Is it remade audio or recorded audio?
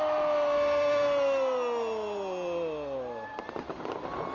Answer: recorded